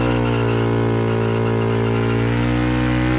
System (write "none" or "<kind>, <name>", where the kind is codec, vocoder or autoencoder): none